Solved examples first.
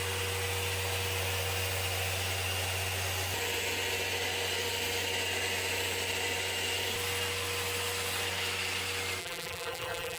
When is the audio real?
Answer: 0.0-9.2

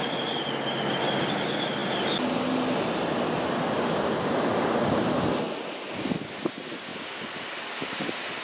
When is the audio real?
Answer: 0.0-8.4